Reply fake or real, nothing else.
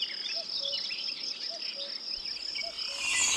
real